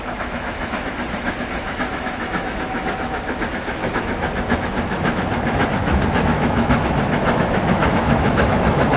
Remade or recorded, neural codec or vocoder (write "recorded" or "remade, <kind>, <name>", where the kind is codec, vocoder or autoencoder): remade, autoencoder, DAC-VAE